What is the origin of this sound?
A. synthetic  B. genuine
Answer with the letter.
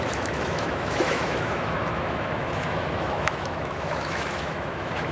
A